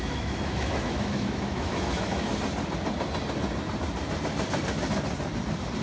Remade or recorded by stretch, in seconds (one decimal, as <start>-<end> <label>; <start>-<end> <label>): 0.0-2.3 remade; 2.3-5.8 recorded